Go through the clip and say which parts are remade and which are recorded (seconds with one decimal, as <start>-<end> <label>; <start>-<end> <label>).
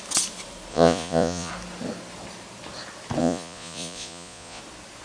0.0-0.7 recorded; 0.7-1.5 remade; 1.5-3.2 recorded; 3.2-4.6 remade; 4.6-5.0 recorded